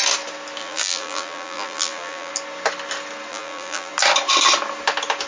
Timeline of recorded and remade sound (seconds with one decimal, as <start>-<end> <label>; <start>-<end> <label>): 0.0-0.6 recorded; 0.6-2.3 remade; 2.3-3.3 recorded; 3.3-3.9 remade; 3.9-5.3 recorded